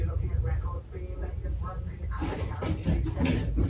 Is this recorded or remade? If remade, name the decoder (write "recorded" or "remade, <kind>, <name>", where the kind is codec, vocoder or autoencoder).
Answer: recorded